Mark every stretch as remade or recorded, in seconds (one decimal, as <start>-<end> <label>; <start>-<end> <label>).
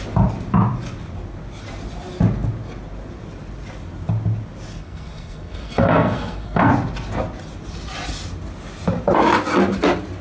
0.0-4.7 recorded; 4.7-6.7 remade; 6.7-10.2 recorded